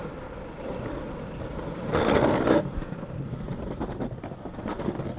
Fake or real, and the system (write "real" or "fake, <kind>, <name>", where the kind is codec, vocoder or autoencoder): real